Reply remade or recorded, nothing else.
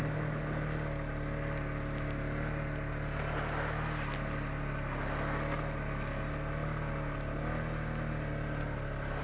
recorded